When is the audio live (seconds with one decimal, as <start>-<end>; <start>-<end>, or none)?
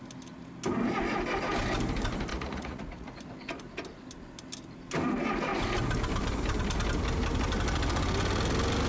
0.0-2.3; 3.2-8.9